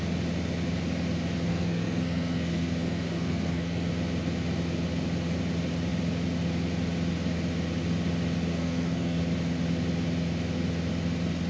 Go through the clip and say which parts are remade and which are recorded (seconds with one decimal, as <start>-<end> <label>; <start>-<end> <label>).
0.0-1.5 recorded; 1.5-3.9 remade; 3.9-8.5 recorded; 8.5-9.2 remade; 9.2-11.5 recorded